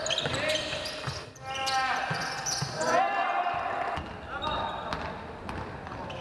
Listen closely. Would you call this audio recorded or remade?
recorded